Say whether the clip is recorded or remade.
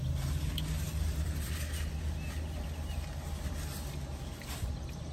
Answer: recorded